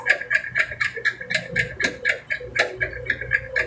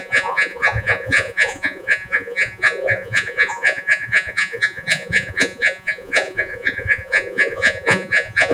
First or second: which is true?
first